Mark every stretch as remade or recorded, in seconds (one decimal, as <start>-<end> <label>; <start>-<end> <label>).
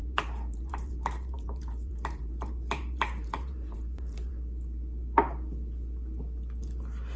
0.0-4.3 remade; 4.3-7.2 recorded